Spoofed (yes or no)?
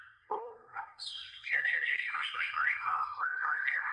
yes